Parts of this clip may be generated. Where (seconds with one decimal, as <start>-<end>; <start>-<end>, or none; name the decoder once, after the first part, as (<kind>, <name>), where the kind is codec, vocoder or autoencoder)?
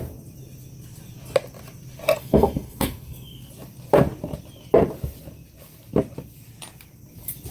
2.2-3.5 (codec, SNAC)